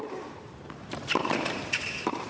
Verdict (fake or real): fake